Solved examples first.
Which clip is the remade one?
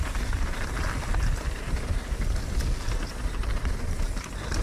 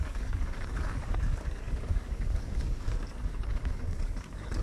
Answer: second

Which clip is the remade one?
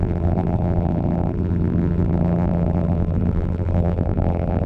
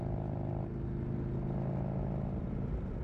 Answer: first